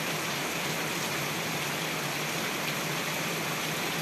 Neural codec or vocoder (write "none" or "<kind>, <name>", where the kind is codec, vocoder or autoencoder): none